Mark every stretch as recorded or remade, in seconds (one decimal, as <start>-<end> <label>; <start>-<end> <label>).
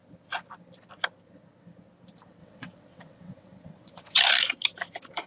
0.0-2.4 recorded; 2.4-4.2 remade; 4.2-5.3 recorded